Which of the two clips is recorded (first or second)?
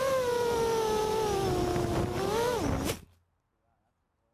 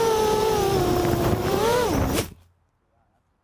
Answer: first